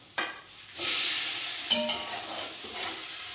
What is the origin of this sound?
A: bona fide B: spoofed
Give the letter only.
A